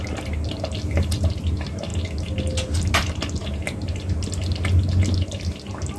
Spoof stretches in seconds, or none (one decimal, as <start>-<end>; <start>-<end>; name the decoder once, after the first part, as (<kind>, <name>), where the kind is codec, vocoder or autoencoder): none